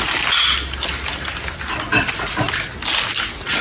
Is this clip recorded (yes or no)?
yes